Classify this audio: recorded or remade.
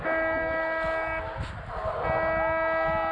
recorded